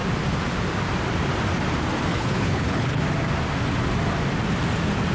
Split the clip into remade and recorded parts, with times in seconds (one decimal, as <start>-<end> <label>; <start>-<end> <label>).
0.0-2.1 recorded; 2.1-3.0 remade; 3.0-5.1 recorded